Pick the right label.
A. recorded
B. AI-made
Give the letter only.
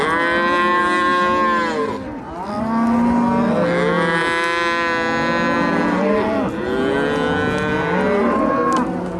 A